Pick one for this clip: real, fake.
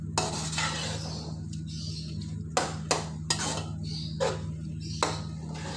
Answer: real